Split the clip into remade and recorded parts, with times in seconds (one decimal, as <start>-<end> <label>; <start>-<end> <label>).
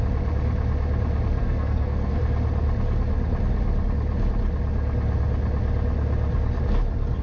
0.0-1.4 recorded; 1.4-2.2 remade; 2.2-7.2 recorded